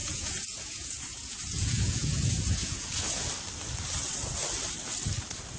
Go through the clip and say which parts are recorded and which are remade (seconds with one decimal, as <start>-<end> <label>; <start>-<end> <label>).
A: 0.0-3.3 remade; 3.3-5.6 recorded

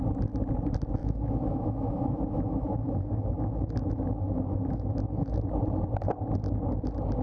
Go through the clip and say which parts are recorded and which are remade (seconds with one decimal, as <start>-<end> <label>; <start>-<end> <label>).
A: 0.0-1.0 recorded; 1.0-5.3 remade; 5.3-7.2 recorded

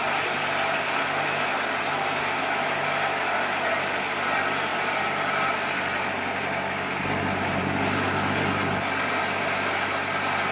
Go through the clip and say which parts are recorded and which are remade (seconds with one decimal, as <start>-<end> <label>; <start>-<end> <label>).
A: 0.0-10.5 recorded

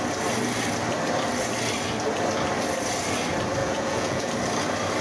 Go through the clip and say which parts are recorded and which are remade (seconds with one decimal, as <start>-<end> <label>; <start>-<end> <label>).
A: 0.0-3.6 recorded; 3.6-4.3 remade; 4.3-5.0 recorded

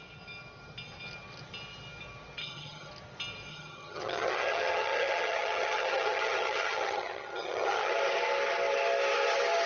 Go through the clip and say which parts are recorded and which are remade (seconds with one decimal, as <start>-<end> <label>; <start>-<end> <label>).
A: 0.0-2.4 recorded; 2.4-2.9 remade; 2.9-3.5 recorded; 3.5-7.9 remade; 7.9-9.7 recorded

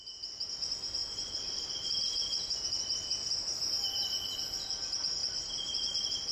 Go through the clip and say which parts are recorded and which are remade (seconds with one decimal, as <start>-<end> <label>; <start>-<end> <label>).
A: 0.0-1.0 recorded; 1.0-1.7 remade; 1.7-5.2 recorded; 5.2-6.3 remade

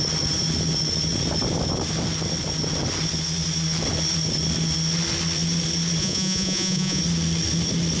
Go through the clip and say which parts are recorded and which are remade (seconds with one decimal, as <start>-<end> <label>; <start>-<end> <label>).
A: 0.0-6.0 recorded; 6.0-7.0 remade; 7.0-8.0 recorded

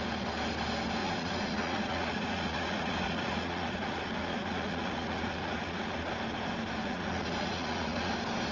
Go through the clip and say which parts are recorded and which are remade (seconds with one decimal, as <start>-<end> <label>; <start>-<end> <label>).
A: 0.0-1.0 recorded; 1.0-6.1 remade; 6.1-6.8 recorded; 6.8-8.1 remade; 8.1-8.5 recorded